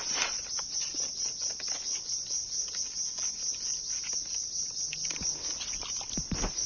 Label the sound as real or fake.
real